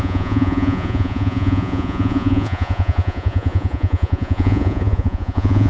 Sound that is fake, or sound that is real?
fake